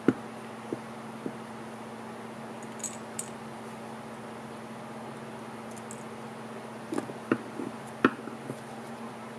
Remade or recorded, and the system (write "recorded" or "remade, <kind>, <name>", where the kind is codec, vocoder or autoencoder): recorded